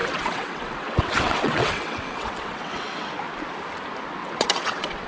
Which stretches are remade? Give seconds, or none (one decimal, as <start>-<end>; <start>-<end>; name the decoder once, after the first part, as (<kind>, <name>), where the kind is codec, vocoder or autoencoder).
0.0-3.1 (vocoder, WaveNeXt); 4.2-5.1